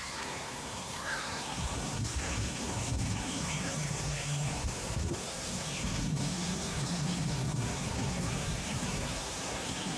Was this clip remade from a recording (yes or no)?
yes